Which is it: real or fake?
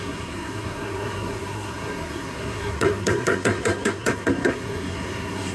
fake